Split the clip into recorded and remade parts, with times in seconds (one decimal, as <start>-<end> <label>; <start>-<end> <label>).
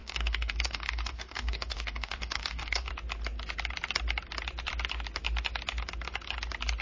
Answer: 0.0-2.9 remade; 2.9-6.8 recorded